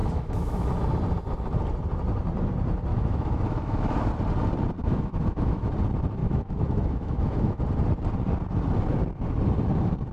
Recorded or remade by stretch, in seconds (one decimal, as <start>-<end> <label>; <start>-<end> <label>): 0.0-0.7 remade; 0.7-2.9 recorded; 2.9-4.1 remade; 4.1-4.8 recorded; 4.8-5.7 remade; 5.7-6.2 recorded; 6.2-7.6 remade; 7.6-10.1 recorded